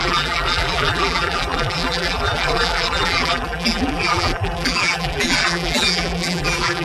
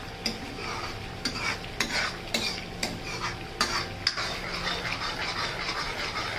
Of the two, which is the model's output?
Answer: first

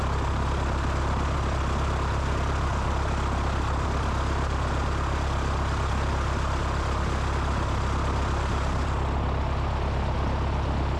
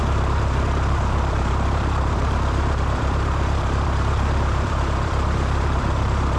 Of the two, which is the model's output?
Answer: second